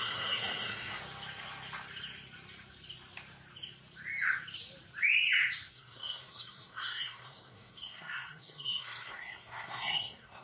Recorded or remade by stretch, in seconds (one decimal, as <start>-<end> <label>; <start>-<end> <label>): 0.0-1.0 remade; 1.0-5.7 recorded; 5.7-10.4 remade